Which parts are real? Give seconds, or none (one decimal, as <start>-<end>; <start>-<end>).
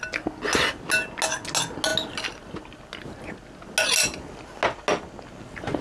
0.0-5.8